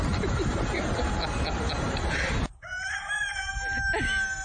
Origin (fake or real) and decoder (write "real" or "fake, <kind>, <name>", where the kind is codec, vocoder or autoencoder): real